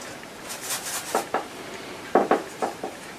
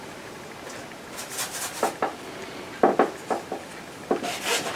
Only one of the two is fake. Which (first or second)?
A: first